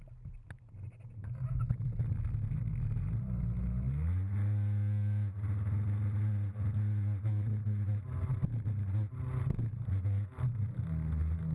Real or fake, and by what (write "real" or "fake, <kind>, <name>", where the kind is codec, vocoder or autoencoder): real